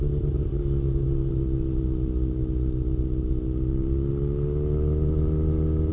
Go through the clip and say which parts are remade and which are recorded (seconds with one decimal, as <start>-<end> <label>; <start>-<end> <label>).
0.0-0.5 recorded; 0.5-1.3 remade; 1.3-5.9 recorded